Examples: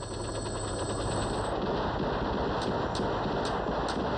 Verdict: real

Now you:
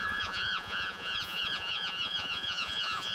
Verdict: fake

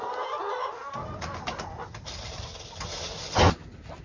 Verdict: real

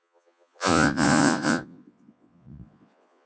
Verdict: fake